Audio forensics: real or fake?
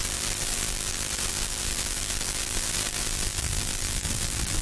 fake